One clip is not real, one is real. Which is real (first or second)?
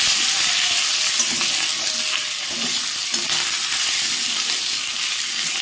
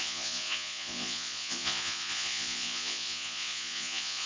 first